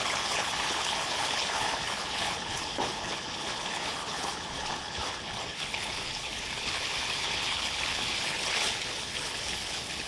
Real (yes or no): no